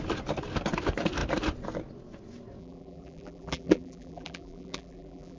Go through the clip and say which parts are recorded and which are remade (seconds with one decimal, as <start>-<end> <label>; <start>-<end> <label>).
0.0-2.6 recorded; 2.6-5.4 remade